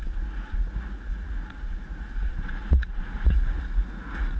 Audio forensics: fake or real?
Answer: fake